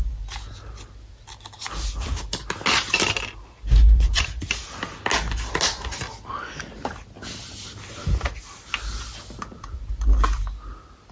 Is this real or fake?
real